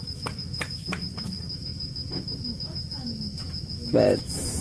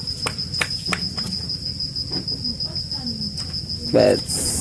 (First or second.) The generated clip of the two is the first